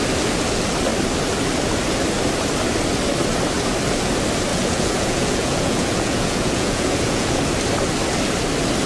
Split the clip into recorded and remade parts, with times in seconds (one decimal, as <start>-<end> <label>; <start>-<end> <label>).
0.0-4.5 recorded; 4.5-7.4 remade; 7.4-8.9 recorded

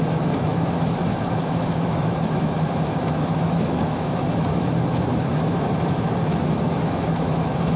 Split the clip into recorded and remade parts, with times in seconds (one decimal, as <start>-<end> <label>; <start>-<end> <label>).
0.0-7.8 remade

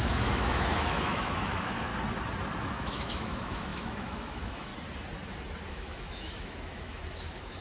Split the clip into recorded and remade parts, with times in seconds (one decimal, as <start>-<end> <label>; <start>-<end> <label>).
0.0-1.9 remade; 1.9-2.6 recorded; 2.6-4.7 remade; 4.7-5.7 recorded; 5.7-7.6 remade

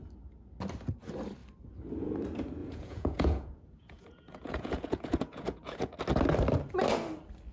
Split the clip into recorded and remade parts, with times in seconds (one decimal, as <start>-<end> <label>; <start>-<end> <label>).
0.0-2.6 recorded; 2.6-6.0 remade; 6.0-7.5 recorded

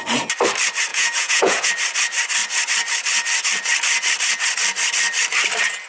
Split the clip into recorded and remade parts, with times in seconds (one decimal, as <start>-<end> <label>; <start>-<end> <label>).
0.0-0.9 recorded; 0.9-1.7 remade; 1.7-5.9 recorded

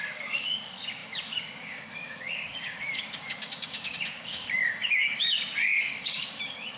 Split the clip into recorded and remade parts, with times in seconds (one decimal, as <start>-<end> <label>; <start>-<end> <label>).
0.0-6.8 remade